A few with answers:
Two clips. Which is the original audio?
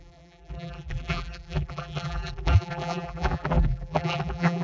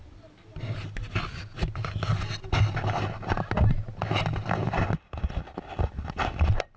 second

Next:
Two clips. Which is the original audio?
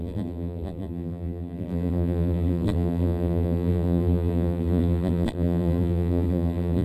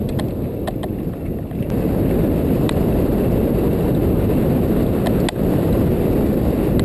second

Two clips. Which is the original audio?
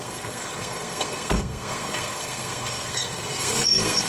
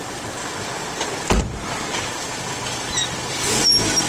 second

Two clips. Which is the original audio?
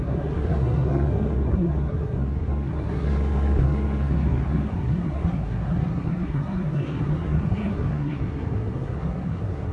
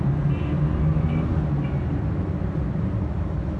second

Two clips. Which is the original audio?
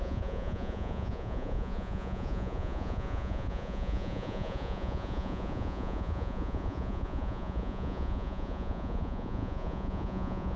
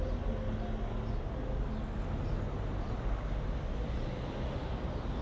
second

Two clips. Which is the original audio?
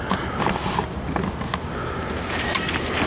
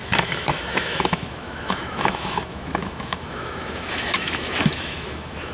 first